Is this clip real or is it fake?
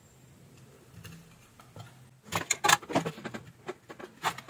real